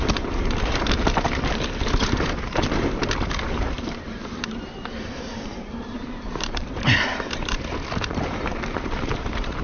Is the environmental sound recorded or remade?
remade